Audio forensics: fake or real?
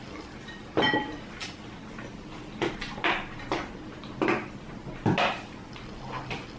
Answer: real